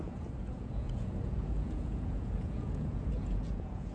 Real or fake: fake